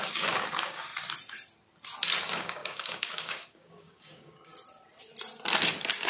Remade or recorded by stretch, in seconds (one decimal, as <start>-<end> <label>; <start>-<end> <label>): 0.0-0.9 remade; 0.9-2.2 recorded; 2.2-4.5 remade; 4.5-6.1 recorded